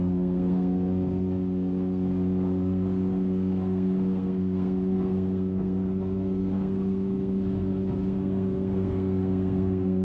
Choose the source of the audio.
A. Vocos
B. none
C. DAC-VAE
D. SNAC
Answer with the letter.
D